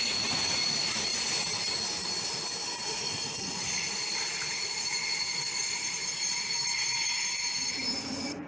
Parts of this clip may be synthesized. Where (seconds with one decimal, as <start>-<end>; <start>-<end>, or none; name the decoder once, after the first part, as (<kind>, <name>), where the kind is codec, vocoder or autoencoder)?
0.0-1.1 (vocoder, Vocos); 2.9-6.0; 8.0-8.5

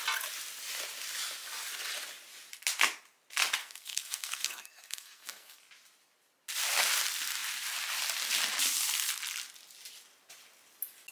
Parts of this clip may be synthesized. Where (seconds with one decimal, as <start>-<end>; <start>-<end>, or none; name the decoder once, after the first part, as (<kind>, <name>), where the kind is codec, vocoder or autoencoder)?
3.6-5.6 (codec, SNAC)